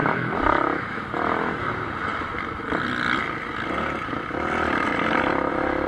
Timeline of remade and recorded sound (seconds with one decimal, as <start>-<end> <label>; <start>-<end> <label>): 0.0-1.7 remade; 1.7-5.9 recorded